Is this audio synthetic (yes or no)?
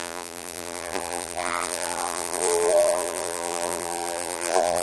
yes